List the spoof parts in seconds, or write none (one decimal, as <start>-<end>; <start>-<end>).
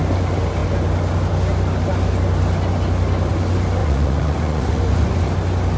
3.8-5.3